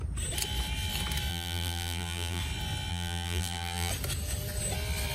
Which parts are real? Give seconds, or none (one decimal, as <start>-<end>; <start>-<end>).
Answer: 0.0-1.3; 2.4-2.9; 3.9-5.1